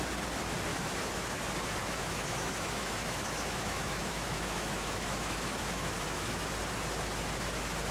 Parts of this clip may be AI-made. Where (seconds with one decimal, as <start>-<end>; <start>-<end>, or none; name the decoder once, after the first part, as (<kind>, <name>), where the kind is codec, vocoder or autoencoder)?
0.7-1.4 (autoencoder, DAC-VAE); 1.8-6.5